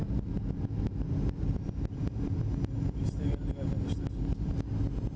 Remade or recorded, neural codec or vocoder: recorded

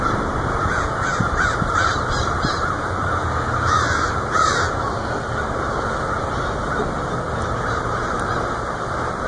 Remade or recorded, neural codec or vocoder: remade, vocoder, BigVGAN v2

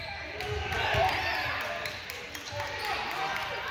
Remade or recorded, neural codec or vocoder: recorded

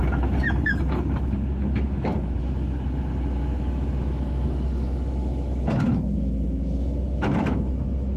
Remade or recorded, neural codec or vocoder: remade, autoencoder, DAC-VAE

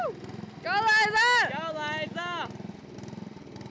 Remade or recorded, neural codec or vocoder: recorded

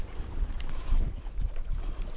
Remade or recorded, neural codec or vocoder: remade, vocoder, BigVGAN v2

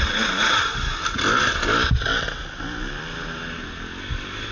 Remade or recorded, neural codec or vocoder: recorded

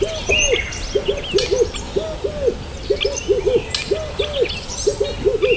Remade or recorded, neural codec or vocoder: recorded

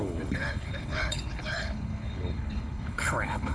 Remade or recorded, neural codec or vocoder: remade, codec, HILCodec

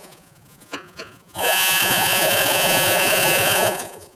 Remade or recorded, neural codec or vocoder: remade, vocoder, Vocos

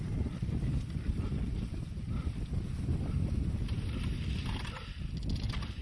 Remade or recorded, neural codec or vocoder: recorded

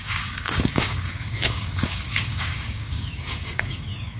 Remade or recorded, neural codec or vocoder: remade, codec, DAC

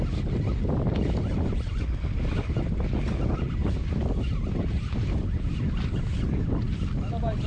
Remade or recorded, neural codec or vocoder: recorded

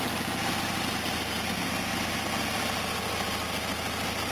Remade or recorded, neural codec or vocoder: recorded